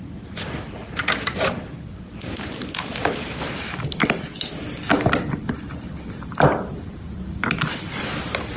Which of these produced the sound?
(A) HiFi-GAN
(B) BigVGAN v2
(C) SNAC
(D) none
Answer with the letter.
D